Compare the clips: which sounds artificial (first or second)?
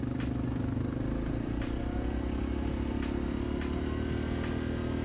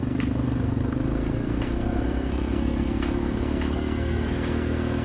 second